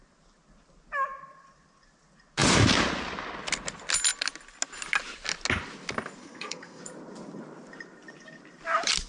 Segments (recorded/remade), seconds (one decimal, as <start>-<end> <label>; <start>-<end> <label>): 0.0-6.2 recorded; 6.2-6.8 remade; 6.8-9.1 recorded